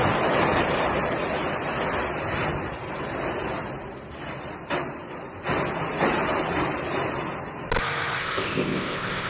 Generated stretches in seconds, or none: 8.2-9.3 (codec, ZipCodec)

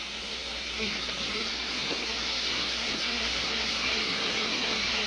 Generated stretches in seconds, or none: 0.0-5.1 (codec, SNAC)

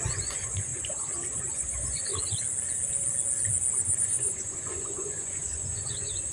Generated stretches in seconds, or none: 0.0-0.7 (vocoder, Vocos); 1.5-2.1; 4.0-6.3

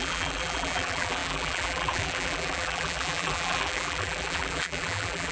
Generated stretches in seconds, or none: 0.0-5.3 (vocoder, BigVGAN v2)

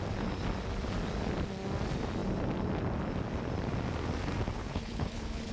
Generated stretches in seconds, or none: 4.5-5.5 (codec, HILCodec)

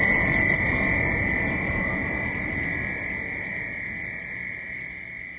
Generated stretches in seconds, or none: none

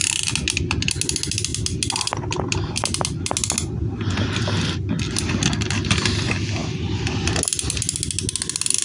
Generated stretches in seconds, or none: none